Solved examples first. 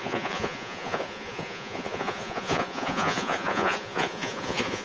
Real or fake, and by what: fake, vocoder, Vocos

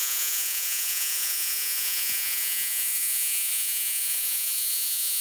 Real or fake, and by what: fake, vocoder, Vocos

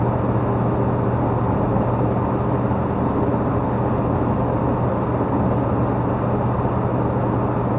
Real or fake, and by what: real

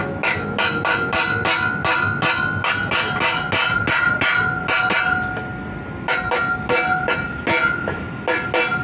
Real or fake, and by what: real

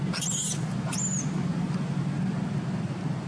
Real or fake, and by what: real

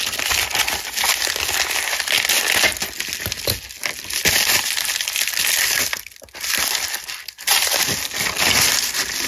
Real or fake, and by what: real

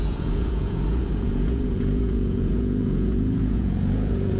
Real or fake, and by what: fake, vocoder, Vocos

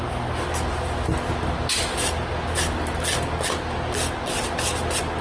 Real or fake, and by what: real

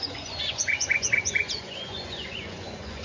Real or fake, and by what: fake, vocoder, Vocos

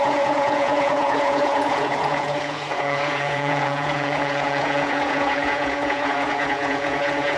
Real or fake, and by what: fake, vocoder, Vocos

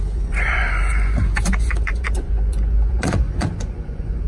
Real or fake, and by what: fake, vocoder, Vocos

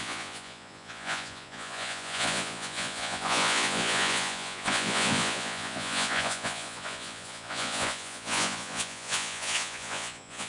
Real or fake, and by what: fake, vocoder, Vocos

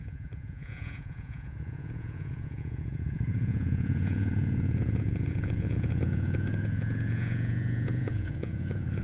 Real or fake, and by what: fake, vocoder, Vocos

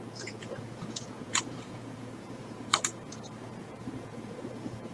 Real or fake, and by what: fake, vocoder, Vocos